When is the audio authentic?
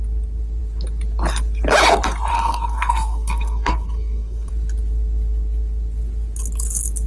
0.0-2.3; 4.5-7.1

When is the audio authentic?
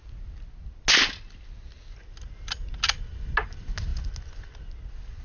0.0-5.2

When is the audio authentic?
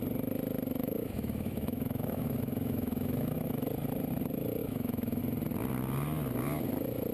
0.0-0.8; 3.6-4.6; 5.2-7.1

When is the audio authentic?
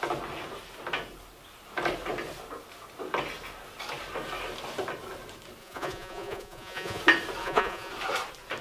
0.0-5.6; 7.0-7.4; 7.9-8.6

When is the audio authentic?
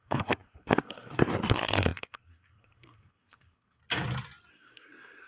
3.8-4.5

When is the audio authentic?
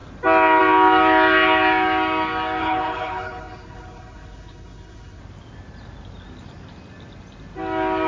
0.0-2.6; 5.2-8.1